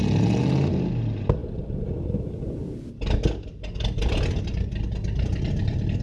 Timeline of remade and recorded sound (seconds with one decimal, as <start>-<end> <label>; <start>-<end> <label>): 0.0-6.0 recorded